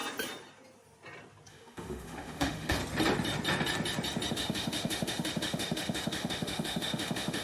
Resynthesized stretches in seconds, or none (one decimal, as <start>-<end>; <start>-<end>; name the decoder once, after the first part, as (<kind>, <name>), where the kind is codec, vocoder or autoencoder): 1.5-2.8 (autoencoder, DAC-VAE); 4.3-7.4